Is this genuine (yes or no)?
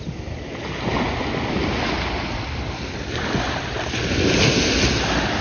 yes